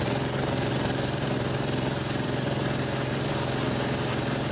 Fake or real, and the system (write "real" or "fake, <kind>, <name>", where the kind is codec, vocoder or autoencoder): fake, vocoder, BigVGAN v2